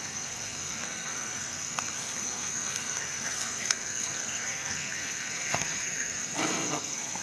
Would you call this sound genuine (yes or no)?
no